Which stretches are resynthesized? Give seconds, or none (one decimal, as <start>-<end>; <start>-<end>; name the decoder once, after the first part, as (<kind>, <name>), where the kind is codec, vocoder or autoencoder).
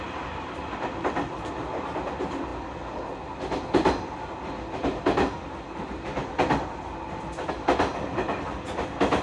none